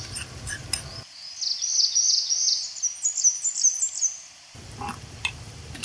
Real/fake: real